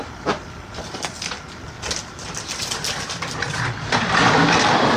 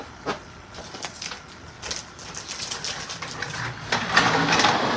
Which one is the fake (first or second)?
first